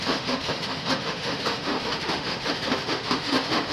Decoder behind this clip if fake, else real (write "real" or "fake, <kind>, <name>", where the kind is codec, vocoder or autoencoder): fake, autoencoder, DAC-VAE